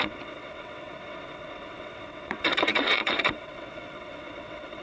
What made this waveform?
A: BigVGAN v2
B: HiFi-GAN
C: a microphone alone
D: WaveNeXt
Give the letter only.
D